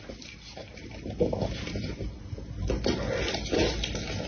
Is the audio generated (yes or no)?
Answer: no